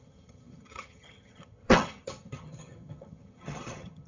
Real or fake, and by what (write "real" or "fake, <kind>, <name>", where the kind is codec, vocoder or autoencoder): fake, vocoder, HiFi-GAN